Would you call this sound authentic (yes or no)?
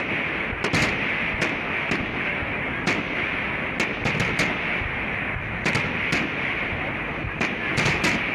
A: yes